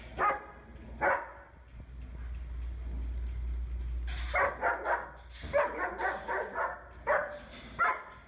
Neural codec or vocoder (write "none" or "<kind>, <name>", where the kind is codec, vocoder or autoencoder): none